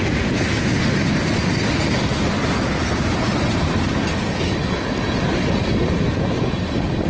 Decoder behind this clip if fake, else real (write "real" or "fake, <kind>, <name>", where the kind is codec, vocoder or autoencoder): real